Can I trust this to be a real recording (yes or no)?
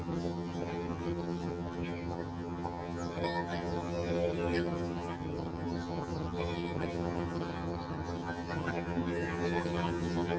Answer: no